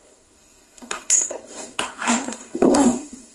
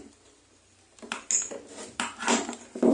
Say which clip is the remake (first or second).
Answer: first